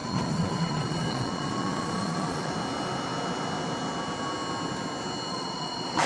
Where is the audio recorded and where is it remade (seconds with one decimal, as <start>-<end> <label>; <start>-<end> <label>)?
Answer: 0.0-2.5 remade; 2.5-5.3 recorded; 5.3-6.1 remade